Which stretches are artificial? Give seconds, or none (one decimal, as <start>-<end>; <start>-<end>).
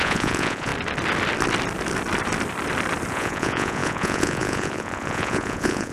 0.0-0.7; 3.1-5.9